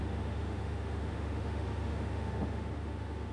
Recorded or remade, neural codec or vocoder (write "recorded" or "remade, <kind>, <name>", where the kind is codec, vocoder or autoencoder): remade, autoencoder, DAC-VAE